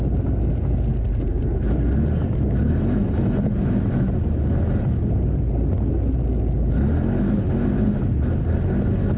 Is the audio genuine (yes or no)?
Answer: yes